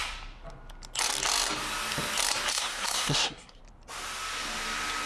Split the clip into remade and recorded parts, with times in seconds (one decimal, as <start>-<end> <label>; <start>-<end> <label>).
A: 0.0-2.5 recorded; 2.5-3.6 remade; 3.6-5.1 recorded